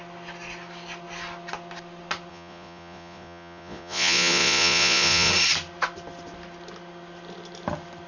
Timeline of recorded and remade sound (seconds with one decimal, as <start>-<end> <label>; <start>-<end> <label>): 0.0-2.3 recorded; 2.3-5.3 remade; 5.3-8.1 recorded